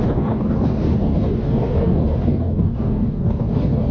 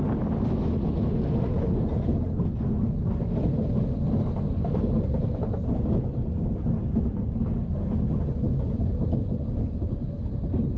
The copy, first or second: first